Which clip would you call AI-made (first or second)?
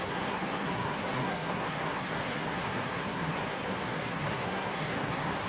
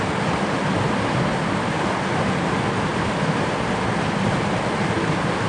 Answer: first